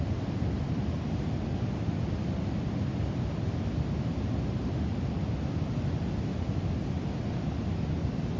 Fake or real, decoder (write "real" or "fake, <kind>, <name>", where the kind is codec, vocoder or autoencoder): real